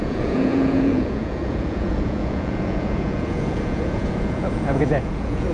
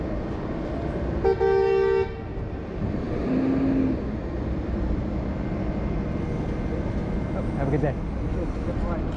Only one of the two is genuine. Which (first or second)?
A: second